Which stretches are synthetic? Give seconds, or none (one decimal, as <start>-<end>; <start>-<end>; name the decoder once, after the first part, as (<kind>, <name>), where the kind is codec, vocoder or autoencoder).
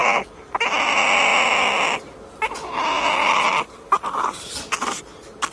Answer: 3.5-5.0 (vocoder, BigVGAN v2)